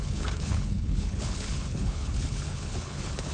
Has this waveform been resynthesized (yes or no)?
yes